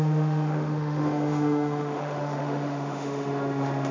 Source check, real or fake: fake